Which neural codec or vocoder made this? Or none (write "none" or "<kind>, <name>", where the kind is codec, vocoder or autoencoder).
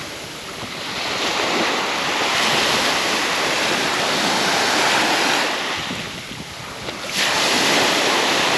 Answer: none